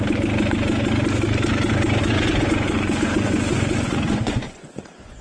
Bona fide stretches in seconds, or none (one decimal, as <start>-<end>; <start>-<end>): 0.0-2.0